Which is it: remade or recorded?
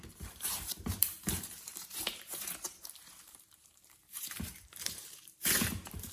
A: remade